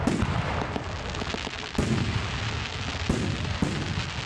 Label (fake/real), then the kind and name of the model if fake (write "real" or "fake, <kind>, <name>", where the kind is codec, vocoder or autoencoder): real